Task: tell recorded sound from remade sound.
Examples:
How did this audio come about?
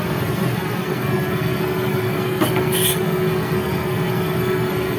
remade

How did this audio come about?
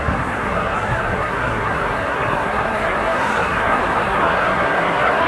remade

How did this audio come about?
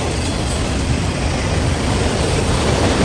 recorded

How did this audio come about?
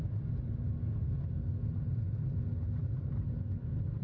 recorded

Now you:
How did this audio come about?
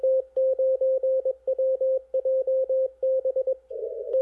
recorded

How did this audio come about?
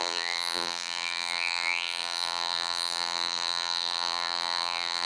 remade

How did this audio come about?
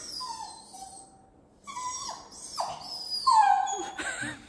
recorded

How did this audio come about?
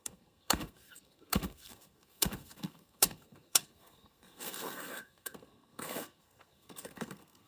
remade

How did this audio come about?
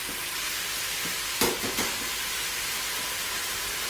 recorded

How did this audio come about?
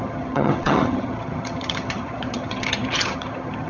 remade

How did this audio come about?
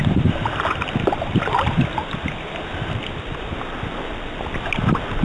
recorded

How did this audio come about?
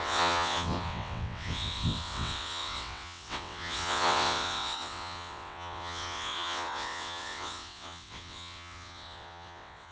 remade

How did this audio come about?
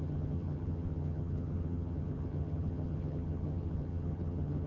remade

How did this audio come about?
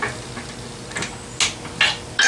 recorded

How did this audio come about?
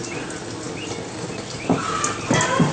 recorded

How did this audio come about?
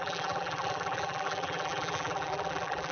remade